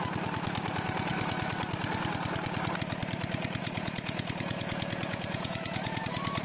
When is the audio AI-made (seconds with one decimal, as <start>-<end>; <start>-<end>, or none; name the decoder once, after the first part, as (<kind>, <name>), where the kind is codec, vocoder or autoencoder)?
3.6-6.0 (vocoder, Vocos)